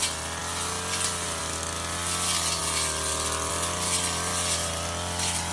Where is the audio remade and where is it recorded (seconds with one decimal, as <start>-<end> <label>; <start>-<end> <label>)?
0.0-5.5 recorded